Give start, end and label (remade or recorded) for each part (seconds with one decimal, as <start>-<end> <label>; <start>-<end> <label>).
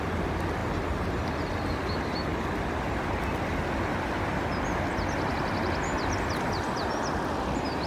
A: 0.0-7.9 recorded